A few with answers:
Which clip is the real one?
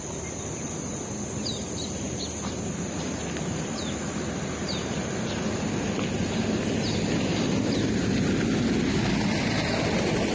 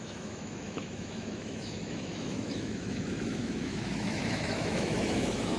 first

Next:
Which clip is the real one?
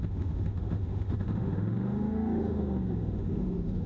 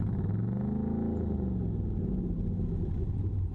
second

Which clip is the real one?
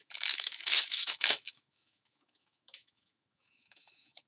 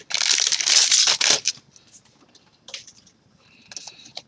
second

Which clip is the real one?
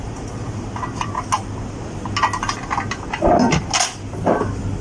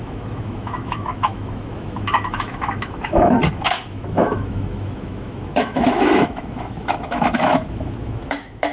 first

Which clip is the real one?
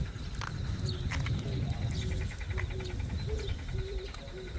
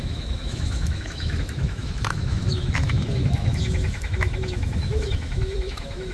first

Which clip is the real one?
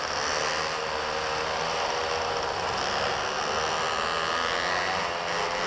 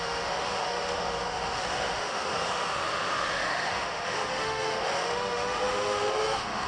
first